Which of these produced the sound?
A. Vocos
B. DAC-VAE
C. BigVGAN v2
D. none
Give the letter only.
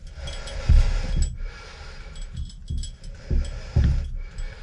D